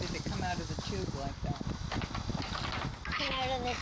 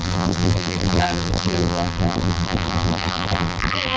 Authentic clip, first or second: first